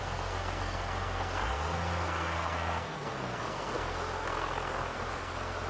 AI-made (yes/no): yes